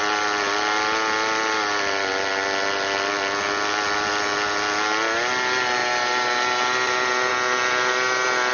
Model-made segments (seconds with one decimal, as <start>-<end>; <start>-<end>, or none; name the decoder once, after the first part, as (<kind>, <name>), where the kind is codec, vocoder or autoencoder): none